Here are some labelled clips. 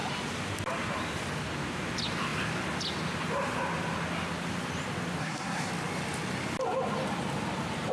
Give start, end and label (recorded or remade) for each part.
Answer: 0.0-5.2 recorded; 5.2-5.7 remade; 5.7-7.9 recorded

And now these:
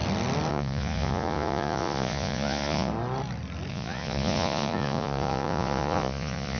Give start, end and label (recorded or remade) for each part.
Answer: 0.0-0.5 recorded; 0.5-2.9 remade; 2.9-3.7 recorded; 3.7-6.6 remade

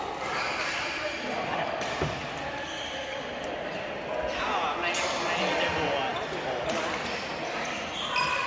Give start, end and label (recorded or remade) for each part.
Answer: 0.0-8.5 recorded

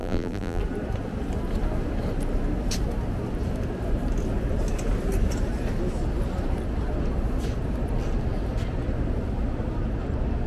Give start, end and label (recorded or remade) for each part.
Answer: 0.0-0.6 remade; 0.6-10.5 recorded